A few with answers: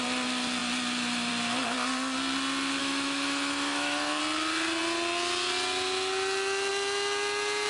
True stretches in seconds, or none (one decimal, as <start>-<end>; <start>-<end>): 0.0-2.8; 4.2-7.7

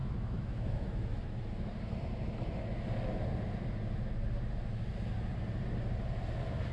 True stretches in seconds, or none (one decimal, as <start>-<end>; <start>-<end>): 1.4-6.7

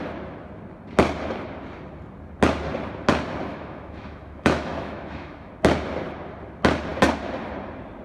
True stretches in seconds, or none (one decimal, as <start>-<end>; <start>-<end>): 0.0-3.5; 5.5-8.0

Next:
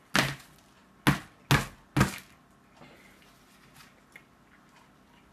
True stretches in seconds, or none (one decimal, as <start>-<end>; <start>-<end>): 0.0-5.3

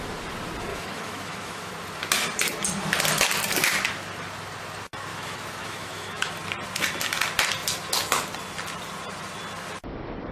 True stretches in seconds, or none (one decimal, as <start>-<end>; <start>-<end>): 0.0-0.7; 1.7-5.1; 6.3-10.3